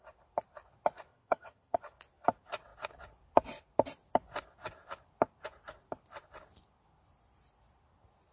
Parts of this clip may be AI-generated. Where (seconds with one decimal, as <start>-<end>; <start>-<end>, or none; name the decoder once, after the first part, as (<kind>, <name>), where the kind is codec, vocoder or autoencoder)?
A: 1.1-1.8 (vocoder, HiFi-GAN)